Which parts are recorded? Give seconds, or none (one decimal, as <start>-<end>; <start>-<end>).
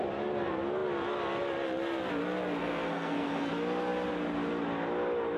0.0-2.6; 3.5-5.4